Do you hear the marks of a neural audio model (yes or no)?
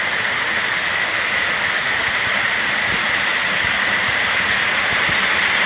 no